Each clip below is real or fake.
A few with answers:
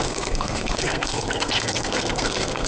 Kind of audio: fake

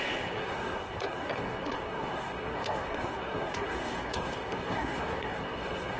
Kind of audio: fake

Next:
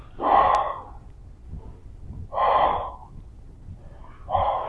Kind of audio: real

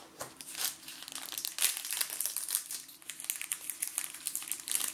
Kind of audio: real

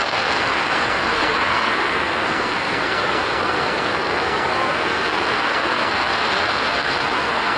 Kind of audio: fake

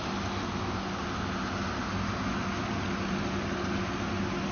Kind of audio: real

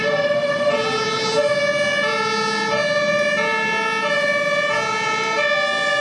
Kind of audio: real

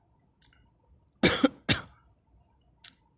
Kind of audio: real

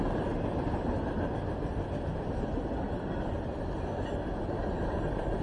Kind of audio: real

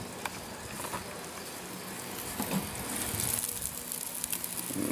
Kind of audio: real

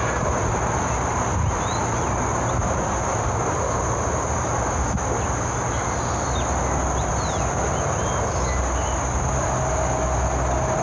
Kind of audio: real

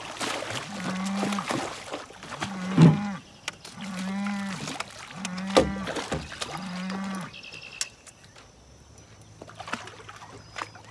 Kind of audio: real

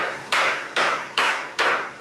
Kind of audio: fake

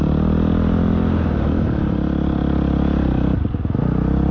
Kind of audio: real